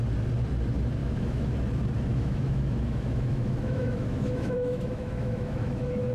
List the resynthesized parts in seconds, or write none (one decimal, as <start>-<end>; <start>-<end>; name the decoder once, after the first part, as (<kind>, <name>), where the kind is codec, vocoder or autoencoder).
1.0-1.5 (autoencoder, DAC-VAE); 2.1-6.1